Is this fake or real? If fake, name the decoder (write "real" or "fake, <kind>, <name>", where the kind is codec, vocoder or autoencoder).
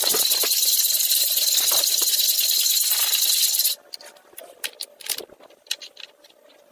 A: real